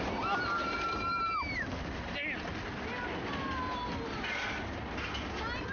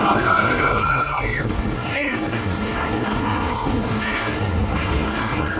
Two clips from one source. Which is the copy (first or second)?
second